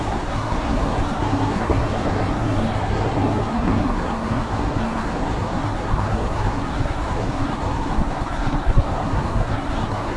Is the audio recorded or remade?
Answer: remade